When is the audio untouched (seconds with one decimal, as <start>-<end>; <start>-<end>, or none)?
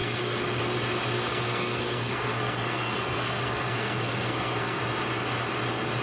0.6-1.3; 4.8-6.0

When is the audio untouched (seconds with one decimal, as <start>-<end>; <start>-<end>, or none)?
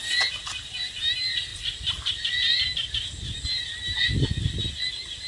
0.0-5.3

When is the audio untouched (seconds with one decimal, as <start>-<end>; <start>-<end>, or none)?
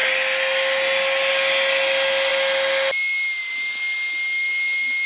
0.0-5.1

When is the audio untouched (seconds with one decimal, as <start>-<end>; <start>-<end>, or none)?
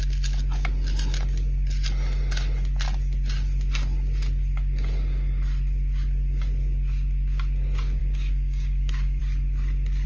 0.0-8.0; 9.2-10.1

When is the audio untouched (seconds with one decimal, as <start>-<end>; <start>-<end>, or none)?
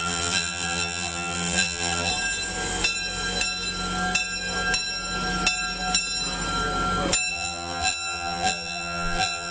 2.1-7.3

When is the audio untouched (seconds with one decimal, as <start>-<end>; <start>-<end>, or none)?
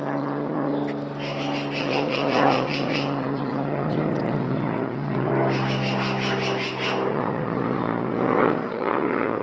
0.7-1.8; 5.3-7.1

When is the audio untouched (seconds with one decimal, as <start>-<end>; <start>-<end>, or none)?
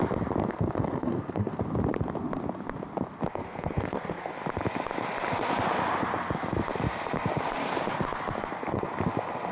0.0-0.4; 1.6-3.4; 4.3-9.5